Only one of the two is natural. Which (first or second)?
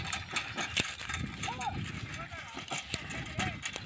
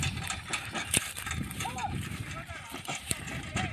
first